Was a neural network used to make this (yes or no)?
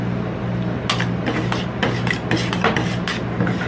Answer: no